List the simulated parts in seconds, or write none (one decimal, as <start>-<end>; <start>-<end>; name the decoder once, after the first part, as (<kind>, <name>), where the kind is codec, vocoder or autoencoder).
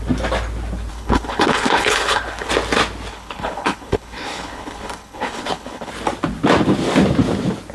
0.9-2.5 (codec, HILCodec); 3.1-5.9